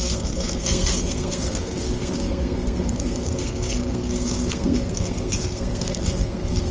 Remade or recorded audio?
remade